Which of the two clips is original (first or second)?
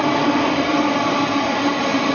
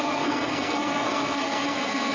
first